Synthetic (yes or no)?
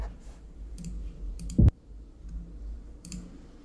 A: yes